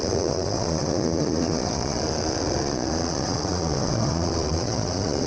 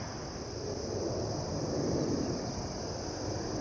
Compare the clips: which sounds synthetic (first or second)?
first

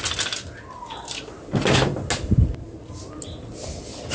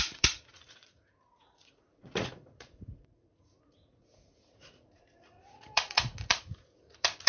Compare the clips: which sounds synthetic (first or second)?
second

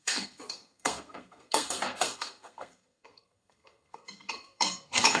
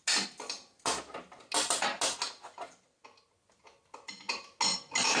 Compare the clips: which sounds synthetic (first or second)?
first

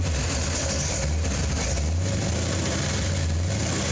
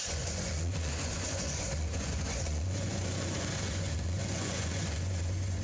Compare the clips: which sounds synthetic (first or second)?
second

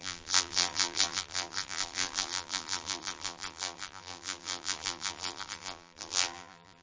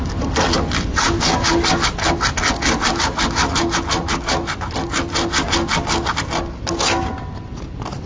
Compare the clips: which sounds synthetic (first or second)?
first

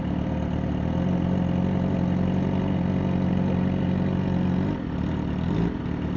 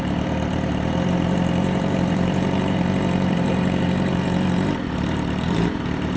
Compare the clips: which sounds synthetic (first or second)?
second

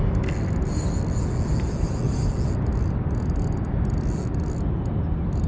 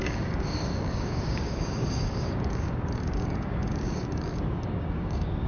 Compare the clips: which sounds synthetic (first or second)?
second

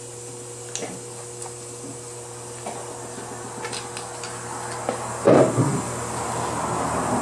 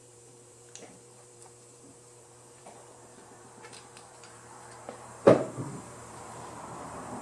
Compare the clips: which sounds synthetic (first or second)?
second